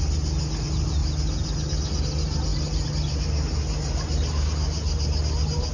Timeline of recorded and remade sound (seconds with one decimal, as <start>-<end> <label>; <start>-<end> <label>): 0.0-5.7 recorded